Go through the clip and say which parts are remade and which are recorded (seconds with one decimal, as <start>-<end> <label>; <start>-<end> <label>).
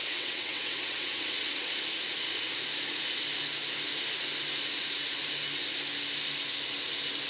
0.0-1.7 remade; 1.7-7.3 recorded